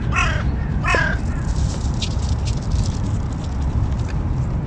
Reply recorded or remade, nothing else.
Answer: recorded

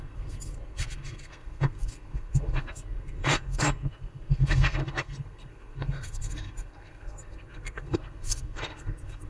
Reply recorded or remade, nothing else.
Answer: remade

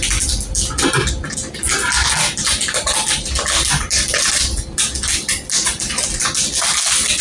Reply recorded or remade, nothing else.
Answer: recorded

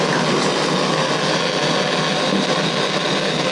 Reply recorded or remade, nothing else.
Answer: recorded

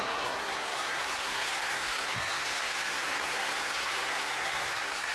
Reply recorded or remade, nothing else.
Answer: remade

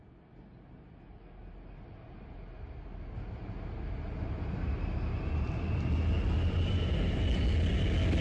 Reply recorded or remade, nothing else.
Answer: recorded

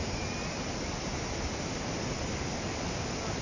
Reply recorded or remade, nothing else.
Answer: recorded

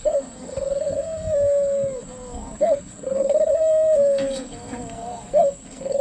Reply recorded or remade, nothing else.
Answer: remade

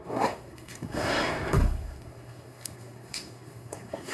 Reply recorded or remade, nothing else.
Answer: remade